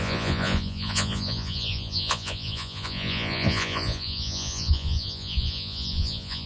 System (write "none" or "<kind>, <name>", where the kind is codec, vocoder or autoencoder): vocoder, Vocos